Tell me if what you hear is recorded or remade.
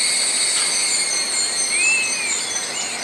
recorded